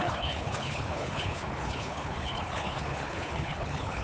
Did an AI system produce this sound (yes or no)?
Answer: yes